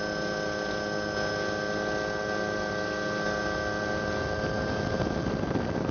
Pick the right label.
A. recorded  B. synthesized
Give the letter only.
A